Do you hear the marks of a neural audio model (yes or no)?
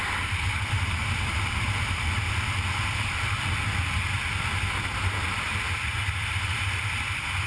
yes